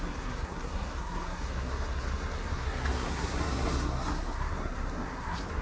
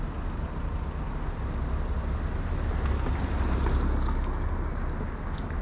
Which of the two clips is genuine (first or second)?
second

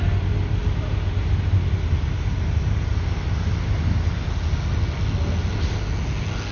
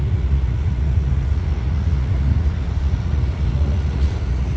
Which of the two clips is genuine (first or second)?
first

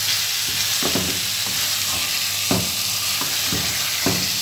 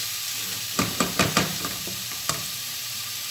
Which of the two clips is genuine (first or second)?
first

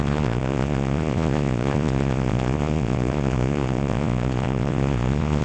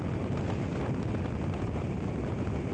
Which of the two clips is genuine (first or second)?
second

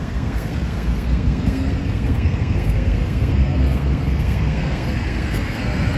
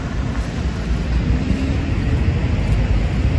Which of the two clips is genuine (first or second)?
second